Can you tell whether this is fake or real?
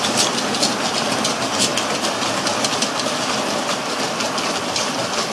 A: real